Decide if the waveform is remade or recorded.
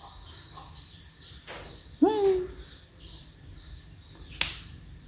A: recorded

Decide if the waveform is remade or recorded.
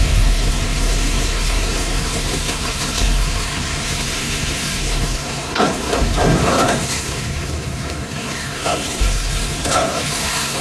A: remade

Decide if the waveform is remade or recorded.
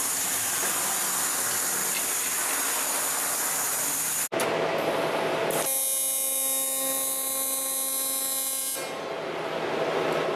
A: recorded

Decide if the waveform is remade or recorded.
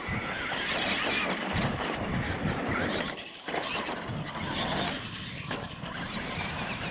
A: recorded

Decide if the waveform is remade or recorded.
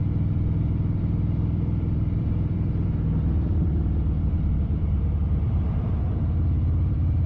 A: remade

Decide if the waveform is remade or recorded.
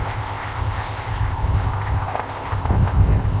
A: remade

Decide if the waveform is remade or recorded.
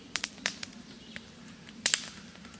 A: remade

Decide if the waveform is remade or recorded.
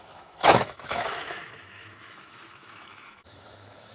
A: remade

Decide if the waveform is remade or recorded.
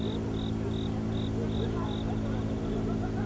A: recorded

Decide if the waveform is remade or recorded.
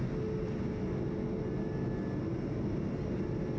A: recorded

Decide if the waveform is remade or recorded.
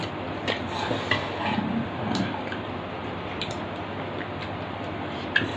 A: remade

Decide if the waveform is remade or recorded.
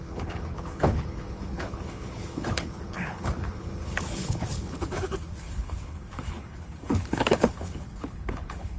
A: remade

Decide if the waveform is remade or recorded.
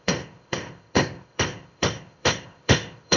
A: remade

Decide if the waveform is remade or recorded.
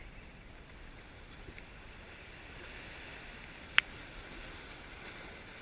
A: recorded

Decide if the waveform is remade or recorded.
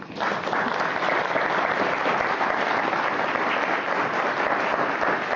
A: recorded